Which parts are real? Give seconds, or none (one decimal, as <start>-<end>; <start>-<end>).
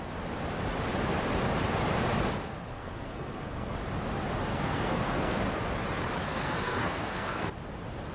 0.0-2.7; 3.8-4.5; 5.4-6.2; 7.5-8.1